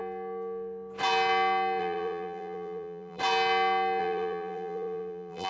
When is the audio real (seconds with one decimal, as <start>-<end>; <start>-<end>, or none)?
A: 0.0-1.8; 3.2-4.0